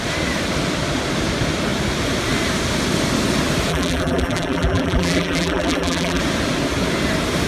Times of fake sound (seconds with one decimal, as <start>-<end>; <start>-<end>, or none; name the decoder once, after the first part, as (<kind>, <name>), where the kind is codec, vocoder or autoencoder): 3.7-6.2 (vocoder, BigVGAN v2)

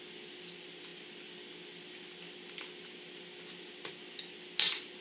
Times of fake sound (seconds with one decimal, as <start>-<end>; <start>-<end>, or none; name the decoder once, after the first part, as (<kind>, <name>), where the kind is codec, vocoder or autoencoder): none